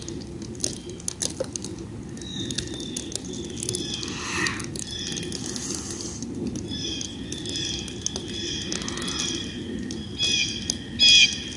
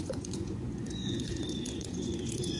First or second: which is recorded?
first